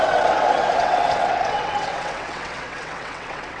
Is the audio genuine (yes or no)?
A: no